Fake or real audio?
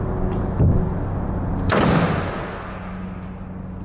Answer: real